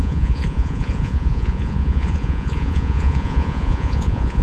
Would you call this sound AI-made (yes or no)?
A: yes